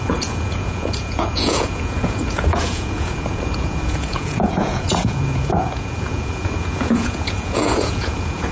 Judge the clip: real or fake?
fake